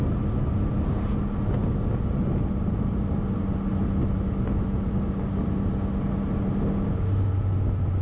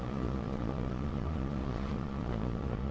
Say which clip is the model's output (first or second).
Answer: second